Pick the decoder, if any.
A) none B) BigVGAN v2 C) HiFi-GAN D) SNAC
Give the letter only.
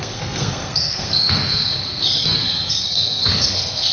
D